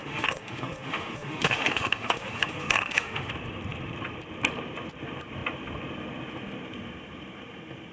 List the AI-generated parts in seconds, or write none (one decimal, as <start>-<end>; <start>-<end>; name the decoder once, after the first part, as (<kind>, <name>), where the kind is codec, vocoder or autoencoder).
0.0-3.3 (autoencoder, DAC-VAE)